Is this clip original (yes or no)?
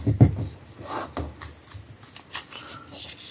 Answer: yes